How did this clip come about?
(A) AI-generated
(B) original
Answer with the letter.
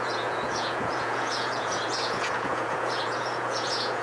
A